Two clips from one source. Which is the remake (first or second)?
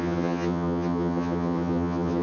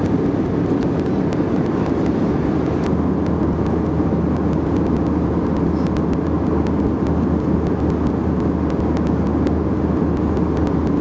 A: first